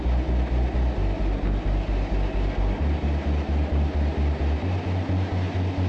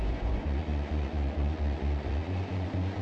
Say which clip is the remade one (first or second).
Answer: second